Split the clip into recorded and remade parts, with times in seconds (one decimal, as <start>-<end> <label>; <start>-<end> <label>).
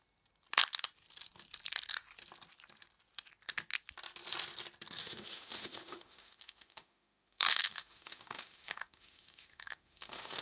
0.0-5.0 recorded; 5.0-10.4 remade